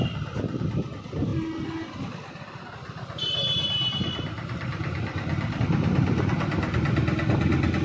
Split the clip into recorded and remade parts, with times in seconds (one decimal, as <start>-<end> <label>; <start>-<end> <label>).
0.0-7.8 recorded